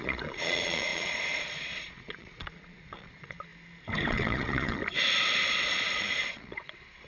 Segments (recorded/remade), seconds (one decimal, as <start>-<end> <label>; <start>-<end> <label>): 0.0-3.5 remade; 3.5-4.1 recorded; 4.1-4.8 remade; 4.8-5.5 recorded; 5.5-7.1 remade